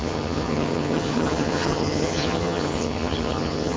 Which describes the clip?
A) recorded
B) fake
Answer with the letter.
B